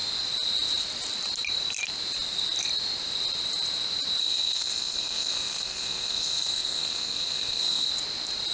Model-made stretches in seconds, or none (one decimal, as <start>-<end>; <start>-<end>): 4.2-7.9